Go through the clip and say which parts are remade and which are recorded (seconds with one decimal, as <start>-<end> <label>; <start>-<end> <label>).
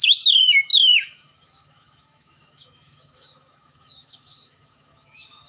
0.0-5.5 remade